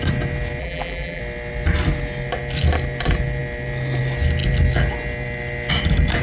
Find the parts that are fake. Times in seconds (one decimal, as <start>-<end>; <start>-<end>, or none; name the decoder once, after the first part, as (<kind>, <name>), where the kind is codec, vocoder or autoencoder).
0.6-1.2 (vocoder, BigVGAN v2)